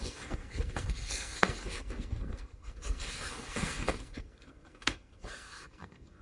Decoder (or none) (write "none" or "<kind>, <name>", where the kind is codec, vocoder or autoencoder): codec, SNAC